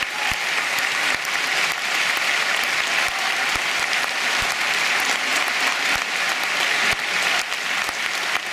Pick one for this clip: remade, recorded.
recorded